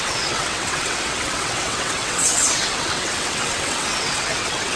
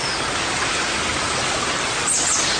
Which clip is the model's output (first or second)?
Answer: first